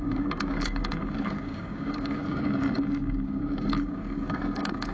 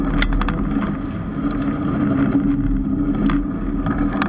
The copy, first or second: first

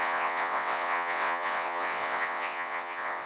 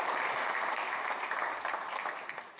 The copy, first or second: first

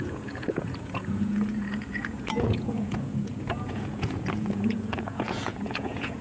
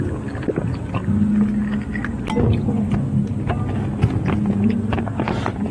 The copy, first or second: first